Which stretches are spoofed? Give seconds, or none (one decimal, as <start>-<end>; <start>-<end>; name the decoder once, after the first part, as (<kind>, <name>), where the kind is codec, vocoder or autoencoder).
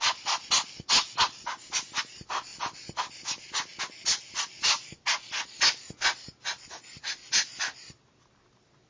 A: none